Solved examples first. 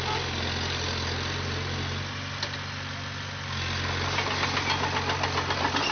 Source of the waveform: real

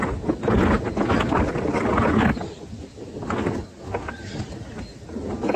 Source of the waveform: real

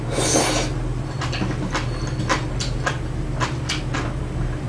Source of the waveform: real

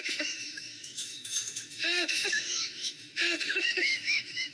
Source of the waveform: fake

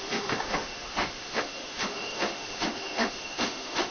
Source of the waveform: fake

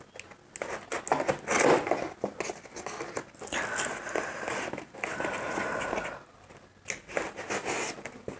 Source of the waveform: real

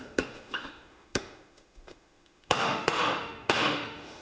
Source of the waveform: fake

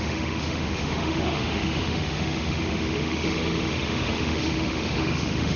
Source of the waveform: fake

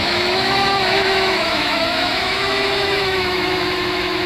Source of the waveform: fake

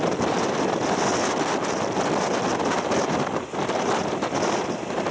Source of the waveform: real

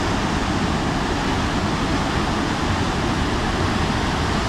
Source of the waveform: real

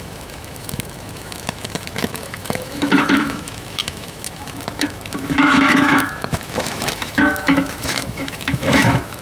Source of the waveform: fake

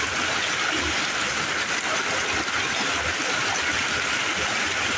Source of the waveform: real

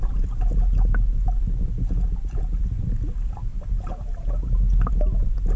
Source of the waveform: real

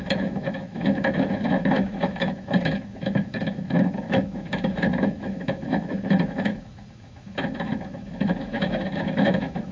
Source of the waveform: fake